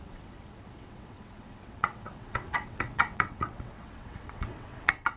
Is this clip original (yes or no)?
no